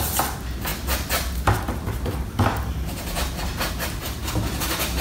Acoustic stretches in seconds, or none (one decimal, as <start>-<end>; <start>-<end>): 0.0-5.0